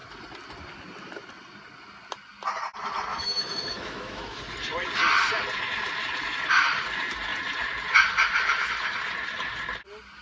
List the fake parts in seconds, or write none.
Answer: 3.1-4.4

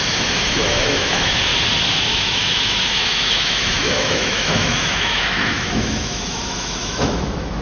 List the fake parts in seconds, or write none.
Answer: 0.0-1.5; 2.0-7.6

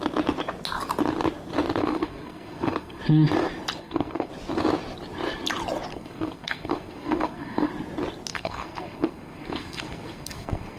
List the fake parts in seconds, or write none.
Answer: 1.8-3.0; 3.8-4.3; 5.9-7.7; 8.3-10.8

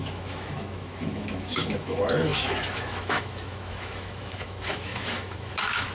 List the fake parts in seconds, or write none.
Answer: 0.0-5.9

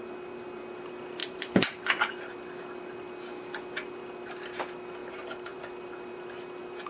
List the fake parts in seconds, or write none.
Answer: 1.2-2.1; 5.0-5.6

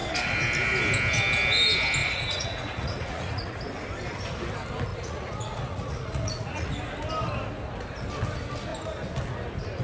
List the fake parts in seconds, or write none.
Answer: 2.0-3.6; 4.9-6.7